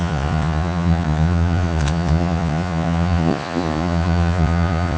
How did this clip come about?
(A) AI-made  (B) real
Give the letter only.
A